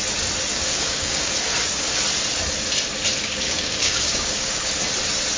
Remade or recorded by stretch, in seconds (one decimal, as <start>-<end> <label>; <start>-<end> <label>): 0.0-0.5 recorded; 0.5-1.3 remade; 1.3-3.2 recorded; 3.2-4.7 remade; 4.7-5.4 recorded